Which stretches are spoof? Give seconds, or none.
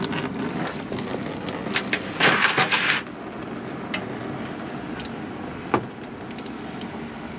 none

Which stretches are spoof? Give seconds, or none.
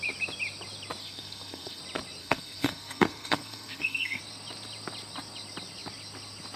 1.0-1.8 (codec, SNAC); 2.2-4.2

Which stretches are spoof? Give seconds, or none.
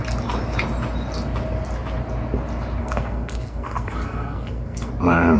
2.8-4.9 (codec, SNAC)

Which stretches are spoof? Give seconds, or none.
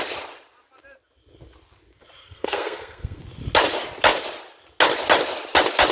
2.2-3.2 (codec, SNAC)